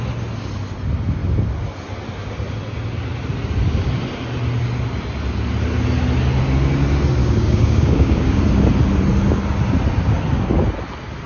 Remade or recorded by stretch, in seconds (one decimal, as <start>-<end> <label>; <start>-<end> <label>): 0.0-7.2 recorded; 7.2-8.4 remade; 8.4-11.3 recorded